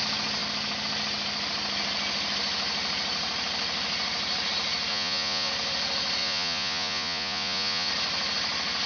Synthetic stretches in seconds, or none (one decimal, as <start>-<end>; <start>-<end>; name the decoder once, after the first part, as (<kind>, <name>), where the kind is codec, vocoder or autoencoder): 4.9-5.5 (vocoder, Vocos); 6.2-7.9